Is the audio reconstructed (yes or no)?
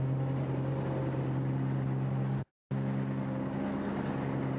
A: no